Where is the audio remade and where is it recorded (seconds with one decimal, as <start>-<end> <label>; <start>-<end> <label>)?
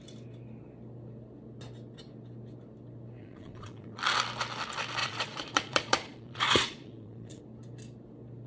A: 0.0-3.2 recorded; 3.2-4.0 remade; 4.0-5.0 recorded; 5.0-7.4 remade; 7.4-8.5 recorded